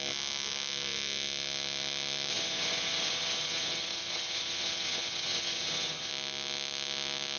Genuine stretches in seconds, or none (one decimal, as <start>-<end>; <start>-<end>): 0.0-2.3; 6.1-7.4